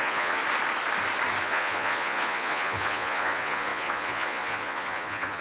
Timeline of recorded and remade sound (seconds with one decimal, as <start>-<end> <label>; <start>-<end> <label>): 0.0-0.4 remade; 0.4-1.4 recorded; 1.4-5.4 remade

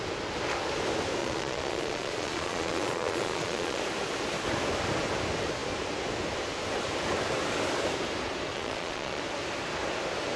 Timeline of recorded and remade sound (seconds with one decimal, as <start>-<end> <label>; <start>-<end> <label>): 0.0-1.2 recorded; 1.2-3.8 remade; 3.8-8.5 recorded; 8.5-9.2 remade; 9.2-10.4 recorded

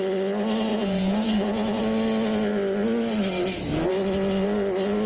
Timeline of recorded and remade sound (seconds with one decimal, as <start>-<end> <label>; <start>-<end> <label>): 0.0-0.7 recorded; 0.7-1.8 remade; 1.8-5.1 recorded

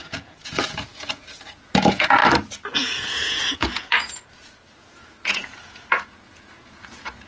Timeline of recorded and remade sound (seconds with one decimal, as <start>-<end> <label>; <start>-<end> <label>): 0.0-2.2 remade; 2.2-2.8 recorded; 2.8-7.3 remade

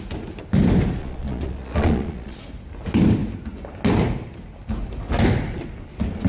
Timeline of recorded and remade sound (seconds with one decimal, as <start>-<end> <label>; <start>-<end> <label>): 0.0-1.0 recorded; 1.0-2.4 remade; 2.4-6.3 recorded